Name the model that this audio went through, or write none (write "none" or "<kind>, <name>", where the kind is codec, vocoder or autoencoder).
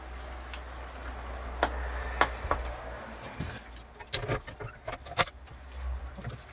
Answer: none